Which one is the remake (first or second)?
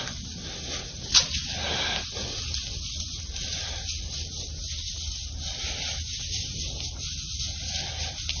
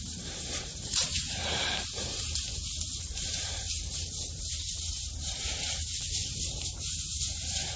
second